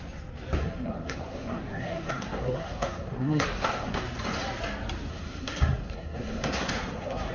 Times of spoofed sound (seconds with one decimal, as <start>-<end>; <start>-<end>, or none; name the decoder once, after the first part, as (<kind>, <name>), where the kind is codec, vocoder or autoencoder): 0.6-4.0 (codec, SNAC); 5.1-7.3